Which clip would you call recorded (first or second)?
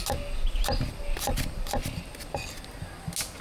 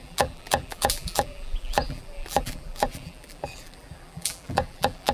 first